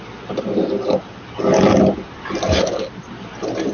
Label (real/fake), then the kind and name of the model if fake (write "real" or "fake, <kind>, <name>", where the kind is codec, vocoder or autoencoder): real